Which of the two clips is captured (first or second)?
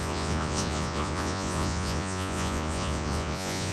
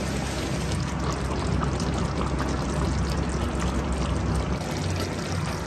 second